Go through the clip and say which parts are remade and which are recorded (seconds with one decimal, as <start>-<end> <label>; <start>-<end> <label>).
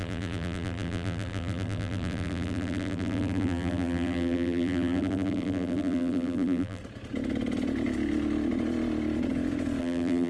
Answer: 0.0-6.8 remade; 6.8-9.8 recorded; 9.8-10.3 remade